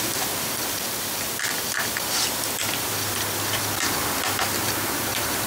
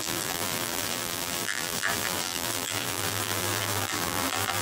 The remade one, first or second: second